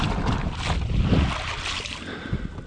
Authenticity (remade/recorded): recorded